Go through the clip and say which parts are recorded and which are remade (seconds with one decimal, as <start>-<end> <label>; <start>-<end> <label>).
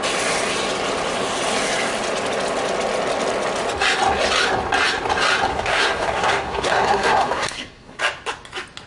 0.0-5.5 recorded; 5.5-8.0 remade; 8.0-8.9 recorded